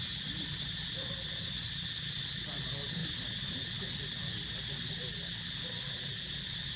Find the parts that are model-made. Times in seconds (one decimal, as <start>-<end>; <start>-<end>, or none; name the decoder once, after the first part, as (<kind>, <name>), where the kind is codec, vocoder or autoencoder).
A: none